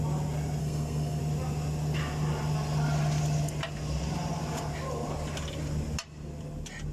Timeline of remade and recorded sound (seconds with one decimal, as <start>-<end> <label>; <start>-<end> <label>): 0.0-0.6 recorded; 0.6-1.2 remade; 1.2-6.9 recorded